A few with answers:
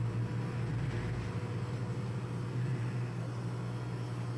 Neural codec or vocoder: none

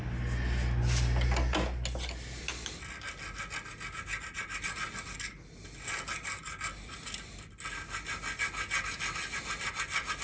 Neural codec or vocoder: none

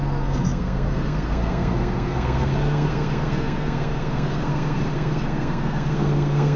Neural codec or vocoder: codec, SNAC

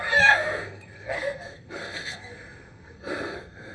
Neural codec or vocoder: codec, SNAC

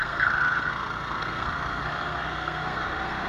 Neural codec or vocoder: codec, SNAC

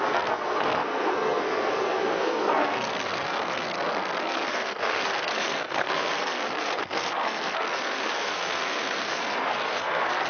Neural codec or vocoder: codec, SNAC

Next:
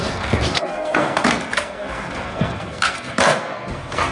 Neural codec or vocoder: codec, SNAC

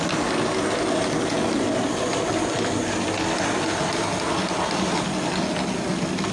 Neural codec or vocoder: none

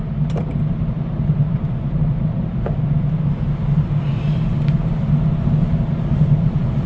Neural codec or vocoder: none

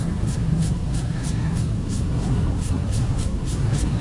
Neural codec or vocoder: codec, SNAC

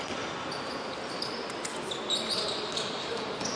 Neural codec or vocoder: none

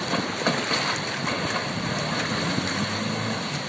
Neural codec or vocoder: none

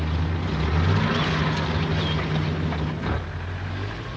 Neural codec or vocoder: none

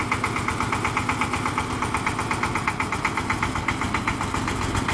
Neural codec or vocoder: none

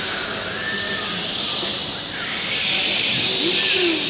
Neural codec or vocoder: none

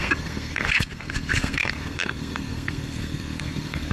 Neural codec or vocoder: codec, SNAC